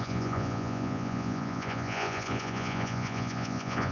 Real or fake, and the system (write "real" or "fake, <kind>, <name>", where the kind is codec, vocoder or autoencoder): fake, vocoder, Vocos